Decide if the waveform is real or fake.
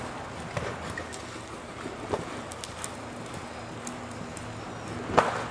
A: real